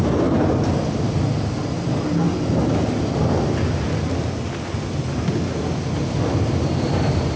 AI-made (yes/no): no